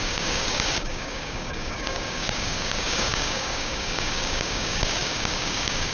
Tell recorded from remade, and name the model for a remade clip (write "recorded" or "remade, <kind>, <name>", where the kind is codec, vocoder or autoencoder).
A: remade, codec, DAC